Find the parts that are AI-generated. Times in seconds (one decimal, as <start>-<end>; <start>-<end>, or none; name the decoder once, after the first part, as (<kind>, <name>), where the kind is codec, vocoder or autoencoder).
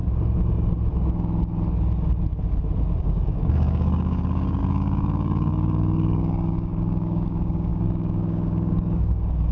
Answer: 3.0-9.5 (codec, DAC)